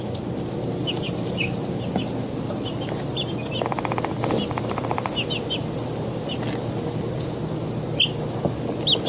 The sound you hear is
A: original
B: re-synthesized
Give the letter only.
A